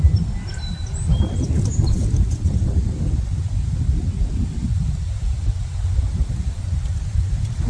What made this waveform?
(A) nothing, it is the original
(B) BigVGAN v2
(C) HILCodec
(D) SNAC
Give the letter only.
A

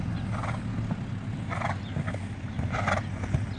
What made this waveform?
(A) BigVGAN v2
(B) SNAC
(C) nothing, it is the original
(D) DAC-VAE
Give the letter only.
C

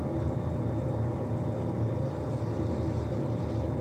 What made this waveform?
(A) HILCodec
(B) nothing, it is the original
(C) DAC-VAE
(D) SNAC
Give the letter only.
B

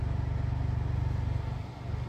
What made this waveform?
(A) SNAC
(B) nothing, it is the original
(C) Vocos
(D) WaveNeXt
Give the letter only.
B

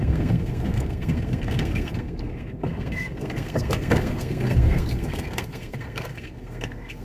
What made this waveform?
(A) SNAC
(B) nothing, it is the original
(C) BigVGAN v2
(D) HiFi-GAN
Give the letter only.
A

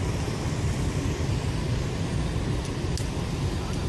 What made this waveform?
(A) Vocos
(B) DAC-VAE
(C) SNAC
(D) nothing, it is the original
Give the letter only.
D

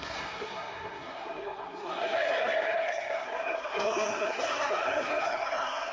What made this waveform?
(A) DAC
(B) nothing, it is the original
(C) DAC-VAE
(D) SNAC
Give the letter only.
D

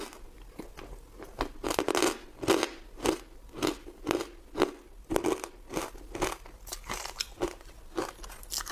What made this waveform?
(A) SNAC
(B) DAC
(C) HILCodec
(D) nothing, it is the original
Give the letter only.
D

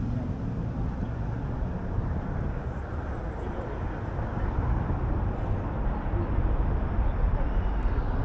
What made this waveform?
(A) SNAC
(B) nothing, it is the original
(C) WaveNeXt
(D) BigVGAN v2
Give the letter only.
B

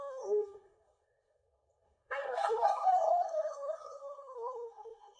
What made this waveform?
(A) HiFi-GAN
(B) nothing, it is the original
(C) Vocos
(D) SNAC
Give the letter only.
D